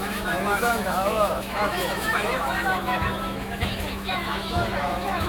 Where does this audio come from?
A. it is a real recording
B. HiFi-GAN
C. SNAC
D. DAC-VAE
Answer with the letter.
D